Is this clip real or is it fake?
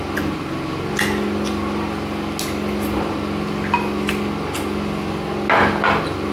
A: real